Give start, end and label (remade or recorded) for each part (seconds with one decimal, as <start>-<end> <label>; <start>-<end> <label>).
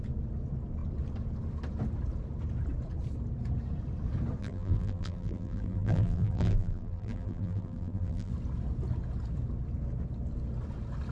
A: 0.0-4.4 recorded; 4.4-8.3 remade; 8.3-11.1 recorded